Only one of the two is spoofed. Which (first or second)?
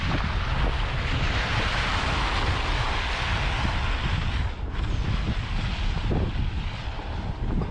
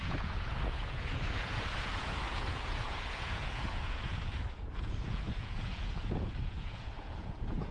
second